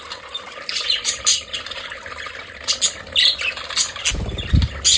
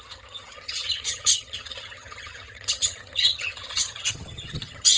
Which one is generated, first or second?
second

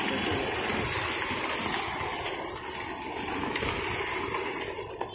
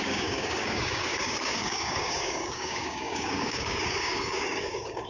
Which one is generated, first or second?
second